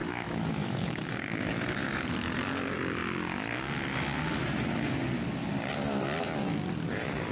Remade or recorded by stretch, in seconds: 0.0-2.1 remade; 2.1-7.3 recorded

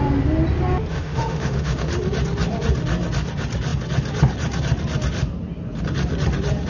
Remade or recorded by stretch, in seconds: 0.0-0.9 recorded; 0.9-1.9 remade; 1.9-6.7 recorded

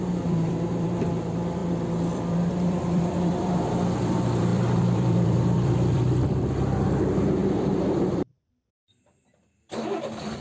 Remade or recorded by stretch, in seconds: 0.0-10.4 remade

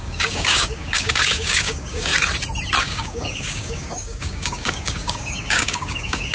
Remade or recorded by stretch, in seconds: 0.0-2.1 remade; 2.1-2.8 recorded; 2.8-6.3 remade

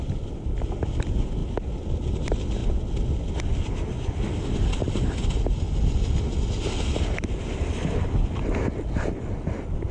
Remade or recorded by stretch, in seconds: 0.0-9.9 recorded

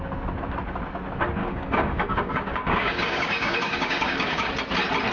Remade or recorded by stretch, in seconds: 0.0-1.4 recorded; 1.4-4.5 remade; 4.5-5.1 recorded

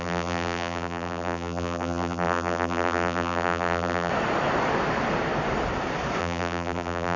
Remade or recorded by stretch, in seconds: 0.0-4.1 remade; 4.1-6.2 recorded; 6.2-7.2 remade